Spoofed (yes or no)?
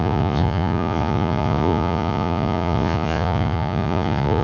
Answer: yes